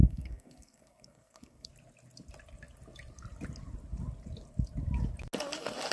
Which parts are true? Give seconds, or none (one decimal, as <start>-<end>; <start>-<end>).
1.7-5.9